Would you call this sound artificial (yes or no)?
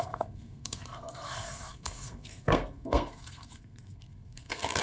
yes